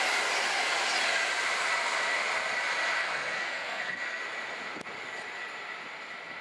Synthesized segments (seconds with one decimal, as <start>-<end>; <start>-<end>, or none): 3.0-4.2